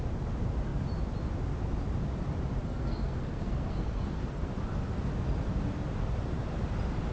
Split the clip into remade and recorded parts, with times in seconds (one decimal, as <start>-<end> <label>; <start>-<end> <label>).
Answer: 0.0-2.6 recorded; 2.6-4.5 remade; 4.5-7.1 recorded